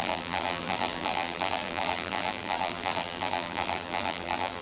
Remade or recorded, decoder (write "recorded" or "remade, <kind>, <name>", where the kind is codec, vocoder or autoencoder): remade, vocoder, BigVGAN v2